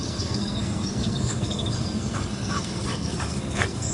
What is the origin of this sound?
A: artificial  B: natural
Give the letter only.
A